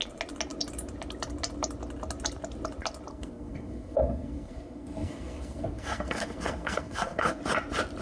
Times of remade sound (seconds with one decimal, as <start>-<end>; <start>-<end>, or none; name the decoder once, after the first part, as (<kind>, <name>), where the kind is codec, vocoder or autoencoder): 3.1-7.4 (codec, SNAC)